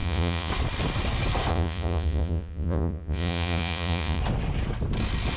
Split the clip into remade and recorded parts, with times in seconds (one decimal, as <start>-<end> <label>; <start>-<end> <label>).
0.0-0.5 remade; 0.5-1.5 recorded; 1.5-4.2 remade; 4.2-5.4 recorded